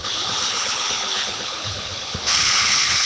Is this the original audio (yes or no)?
no